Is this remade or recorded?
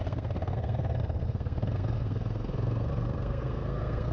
remade